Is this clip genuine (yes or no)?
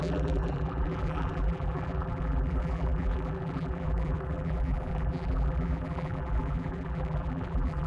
no